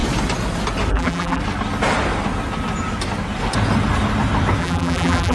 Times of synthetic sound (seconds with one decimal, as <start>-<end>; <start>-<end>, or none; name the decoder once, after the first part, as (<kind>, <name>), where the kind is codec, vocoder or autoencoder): 0.9-1.4 (vocoder, BigVGAN v2); 4.6-5.3